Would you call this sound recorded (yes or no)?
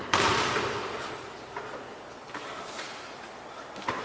yes